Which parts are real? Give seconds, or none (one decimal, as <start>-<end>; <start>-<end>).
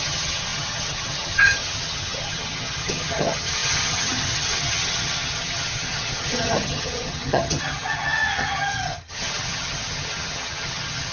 none